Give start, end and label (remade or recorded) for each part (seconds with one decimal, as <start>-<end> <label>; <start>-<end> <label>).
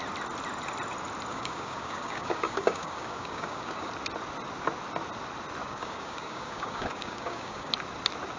0.0-1.3 recorded; 1.3-3.9 remade; 3.9-5.6 recorded; 5.6-7.7 remade; 7.7-8.4 recorded